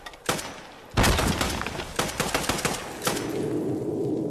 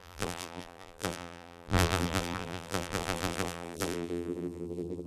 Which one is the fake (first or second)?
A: second